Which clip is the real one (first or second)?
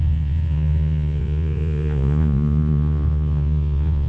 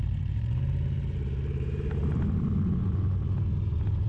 second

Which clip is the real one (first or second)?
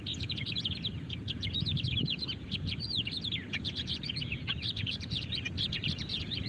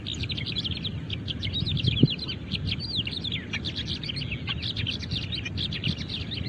second